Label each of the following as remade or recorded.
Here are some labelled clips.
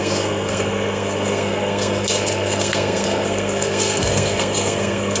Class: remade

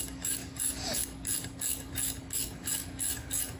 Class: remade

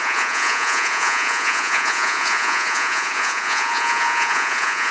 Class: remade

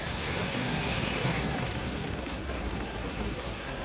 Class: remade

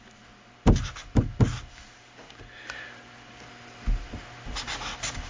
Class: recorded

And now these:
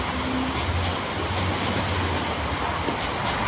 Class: recorded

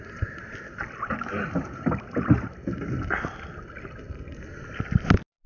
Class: recorded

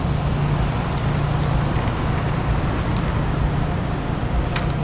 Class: recorded